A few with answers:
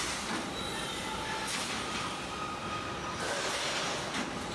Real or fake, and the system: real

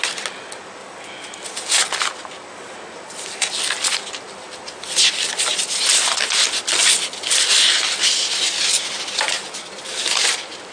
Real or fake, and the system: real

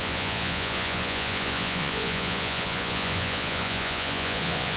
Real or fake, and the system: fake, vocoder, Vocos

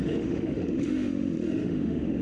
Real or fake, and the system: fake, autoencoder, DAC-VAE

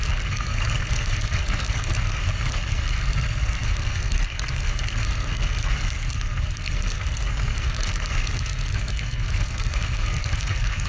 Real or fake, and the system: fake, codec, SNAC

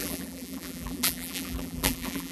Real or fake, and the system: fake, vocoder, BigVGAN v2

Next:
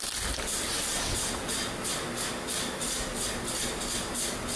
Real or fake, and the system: real